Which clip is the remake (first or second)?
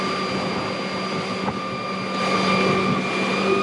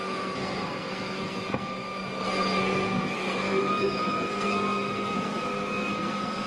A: second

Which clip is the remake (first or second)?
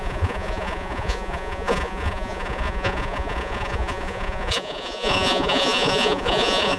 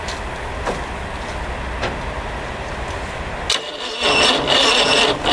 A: first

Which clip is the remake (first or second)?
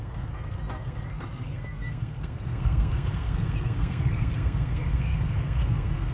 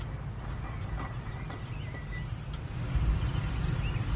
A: first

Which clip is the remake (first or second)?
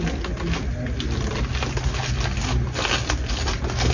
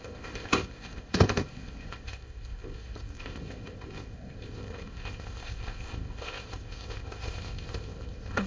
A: second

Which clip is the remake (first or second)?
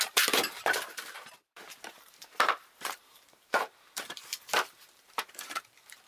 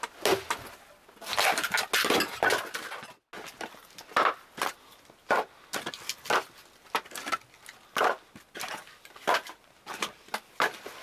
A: first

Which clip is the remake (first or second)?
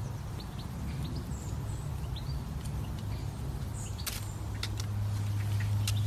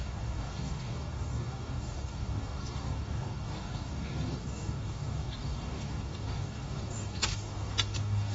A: second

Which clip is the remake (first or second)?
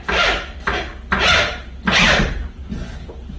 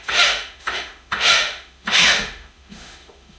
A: second